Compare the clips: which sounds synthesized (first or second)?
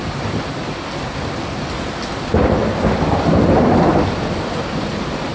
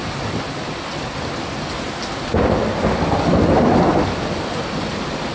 first